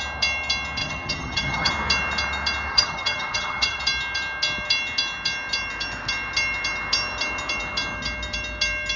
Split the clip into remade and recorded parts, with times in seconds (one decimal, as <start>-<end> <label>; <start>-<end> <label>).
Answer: 0.0-0.8 recorded; 0.8-1.7 remade; 1.7-2.7 recorded; 2.7-3.8 remade; 3.8-9.0 recorded